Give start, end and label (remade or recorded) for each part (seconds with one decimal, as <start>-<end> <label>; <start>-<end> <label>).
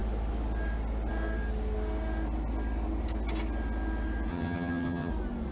0.0-4.3 recorded; 4.3-5.1 remade; 5.1-5.5 recorded